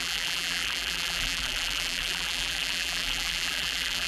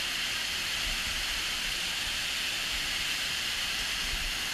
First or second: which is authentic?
second